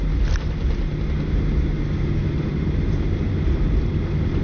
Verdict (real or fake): real